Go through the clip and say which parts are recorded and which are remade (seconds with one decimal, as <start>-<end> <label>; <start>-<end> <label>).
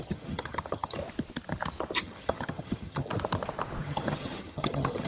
0.0-1.0 remade; 1.0-2.0 recorded; 2.0-3.1 remade; 3.1-3.8 recorded; 3.8-5.1 remade